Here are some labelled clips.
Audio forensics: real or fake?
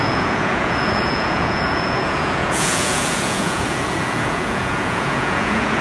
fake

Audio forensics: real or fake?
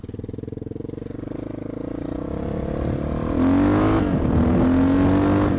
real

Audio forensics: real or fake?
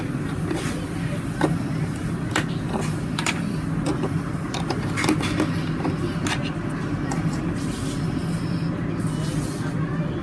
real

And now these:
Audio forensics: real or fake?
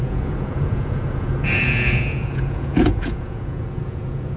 fake